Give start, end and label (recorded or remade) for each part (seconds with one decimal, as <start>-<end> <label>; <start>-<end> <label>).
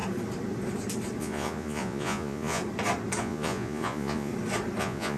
0.0-1.2 recorded; 1.2-2.6 remade; 2.6-3.2 recorded; 3.2-4.3 remade; 4.3-4.8 recorded; 4.8-5.2 remade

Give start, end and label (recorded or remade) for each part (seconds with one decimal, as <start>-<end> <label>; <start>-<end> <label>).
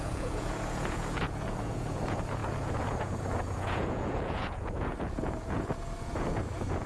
0.0-6.9 remade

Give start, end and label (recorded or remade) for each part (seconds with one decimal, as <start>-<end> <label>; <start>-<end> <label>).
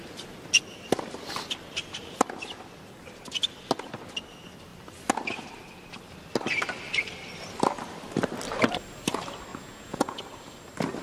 0.0-9.5 recorded; 9.5-10.2 remade; 10.2-11.0 recorded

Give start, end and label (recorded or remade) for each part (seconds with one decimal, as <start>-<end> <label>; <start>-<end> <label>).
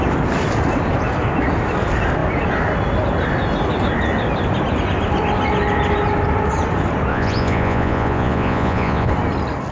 0.0-7.1 recorded; 7.1-9.1 remade; 9.1-9.7 recorded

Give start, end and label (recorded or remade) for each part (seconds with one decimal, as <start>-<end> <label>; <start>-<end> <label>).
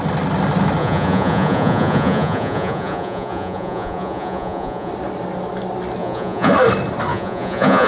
0.0-0.8 recorded; 0.8-4.9 remade; 4.9-6.0 recorded; 6.0-6.5 remade; 6.5-7.1 recorded; 7.1-7.9 remade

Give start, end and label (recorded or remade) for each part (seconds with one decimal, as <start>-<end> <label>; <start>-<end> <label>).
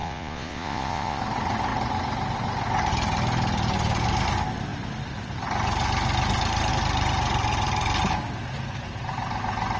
0.0-1.2 remade; 1.2-9.8 recorded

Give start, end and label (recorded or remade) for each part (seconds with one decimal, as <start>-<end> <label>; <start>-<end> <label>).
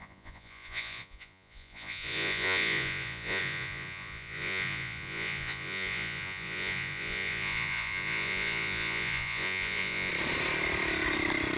0.0-10.1 remade; 10.1-11.6 recorded